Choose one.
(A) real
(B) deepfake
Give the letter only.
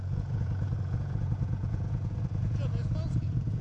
B